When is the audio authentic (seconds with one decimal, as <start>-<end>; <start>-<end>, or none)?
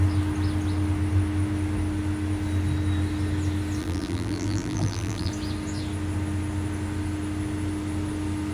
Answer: 0.0-3.8; 5.3-8.5